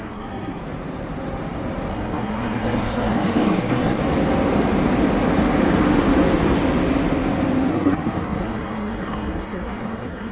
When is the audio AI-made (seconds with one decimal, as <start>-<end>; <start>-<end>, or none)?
0.0-0.6; 1.9-4.0; 7.7-10.3